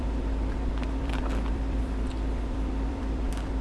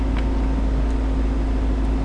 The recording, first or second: second